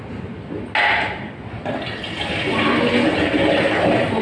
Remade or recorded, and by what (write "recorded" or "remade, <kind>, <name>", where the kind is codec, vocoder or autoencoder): recorded